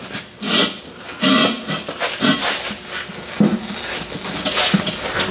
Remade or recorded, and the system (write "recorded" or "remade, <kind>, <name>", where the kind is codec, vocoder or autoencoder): recorded